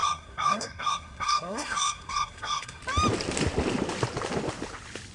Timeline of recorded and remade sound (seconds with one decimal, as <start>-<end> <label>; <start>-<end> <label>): 0.0-2.8 remade; 2.8-5.1 recorded